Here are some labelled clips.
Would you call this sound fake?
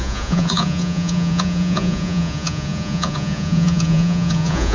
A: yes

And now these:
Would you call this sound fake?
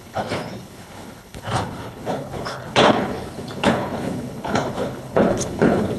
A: yes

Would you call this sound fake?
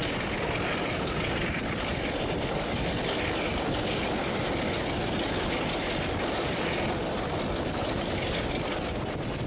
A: no